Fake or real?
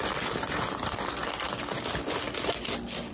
real